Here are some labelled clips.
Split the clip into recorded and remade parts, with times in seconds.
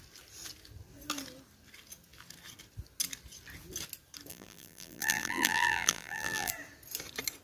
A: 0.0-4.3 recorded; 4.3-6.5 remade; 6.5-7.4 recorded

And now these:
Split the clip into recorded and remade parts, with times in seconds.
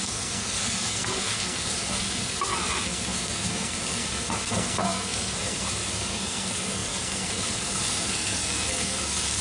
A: 0.0-9.4 remade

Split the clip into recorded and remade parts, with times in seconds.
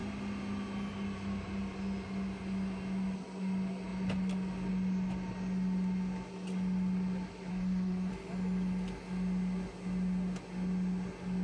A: 0.0-7.5 recorded; 7.5-8.1 remade; 8.1-11.4 recorded